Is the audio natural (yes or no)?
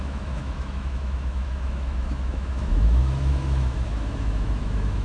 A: no